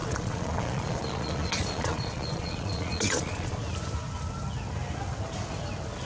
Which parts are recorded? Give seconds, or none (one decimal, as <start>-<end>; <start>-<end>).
3.6-6.0